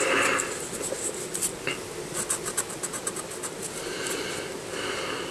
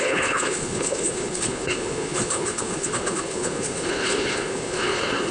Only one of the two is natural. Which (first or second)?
first